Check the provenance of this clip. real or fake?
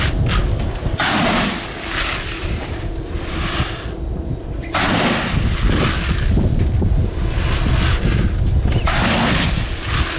real